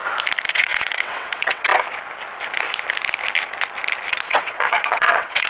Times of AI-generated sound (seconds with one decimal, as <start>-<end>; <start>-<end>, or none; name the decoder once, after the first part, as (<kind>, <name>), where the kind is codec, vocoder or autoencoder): 0.5-1.7 (vocoder, WaveNeXt); 4.1-5.5